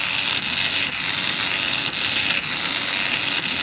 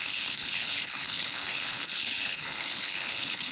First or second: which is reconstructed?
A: second